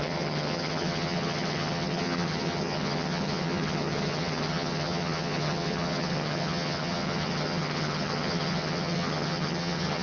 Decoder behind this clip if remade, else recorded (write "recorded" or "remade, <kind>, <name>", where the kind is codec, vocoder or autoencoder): remade, vocoder, HiFi-GAN